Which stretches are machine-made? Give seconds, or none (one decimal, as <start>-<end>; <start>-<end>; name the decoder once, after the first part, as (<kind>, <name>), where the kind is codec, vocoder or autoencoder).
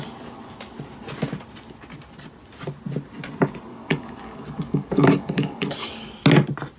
3.7-6.1 (codec, DAC)